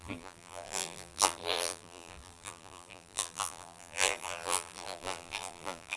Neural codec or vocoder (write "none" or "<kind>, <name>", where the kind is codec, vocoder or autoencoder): vocoder, BigVGAN v2